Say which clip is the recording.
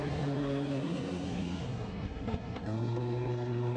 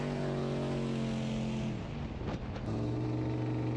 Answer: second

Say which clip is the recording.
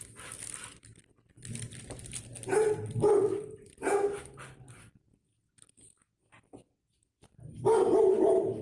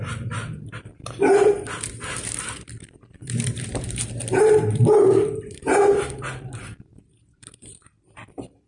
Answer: first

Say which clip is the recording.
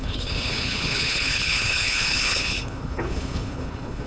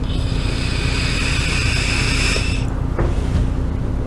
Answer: second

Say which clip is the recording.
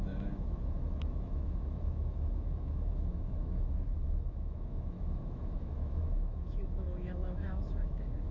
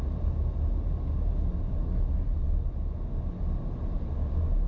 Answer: second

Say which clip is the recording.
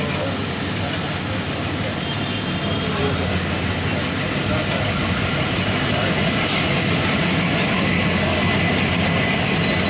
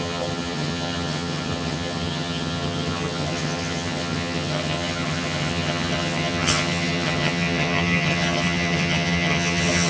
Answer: first